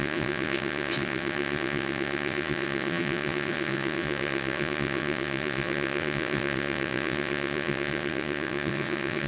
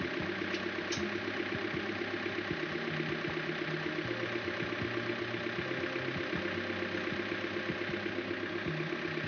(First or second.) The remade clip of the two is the first